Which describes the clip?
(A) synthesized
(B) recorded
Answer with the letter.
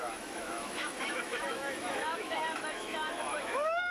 A